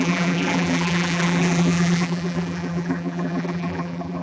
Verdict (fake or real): fake